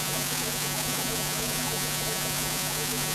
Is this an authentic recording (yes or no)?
no